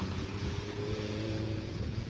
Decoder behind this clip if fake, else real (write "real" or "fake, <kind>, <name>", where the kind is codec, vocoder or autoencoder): fake, vocoder, Vocos